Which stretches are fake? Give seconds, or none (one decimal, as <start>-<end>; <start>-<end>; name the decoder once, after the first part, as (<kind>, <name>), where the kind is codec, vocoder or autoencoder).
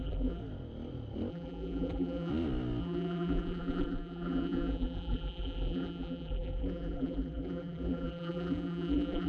0.0-0.4 (vocoder, BigVGAN v2); 1.3-2.3; 2.8-9.3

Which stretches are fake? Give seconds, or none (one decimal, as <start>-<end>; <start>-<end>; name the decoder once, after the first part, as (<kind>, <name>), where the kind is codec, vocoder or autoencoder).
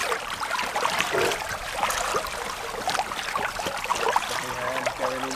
3.9-4.5 (vocoder, BigVGAN v2)